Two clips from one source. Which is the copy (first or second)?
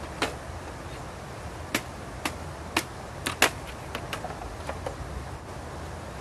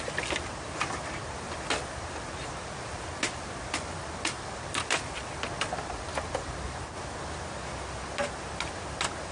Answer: second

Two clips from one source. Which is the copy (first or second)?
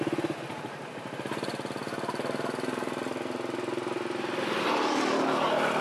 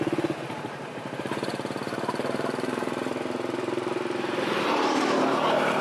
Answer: second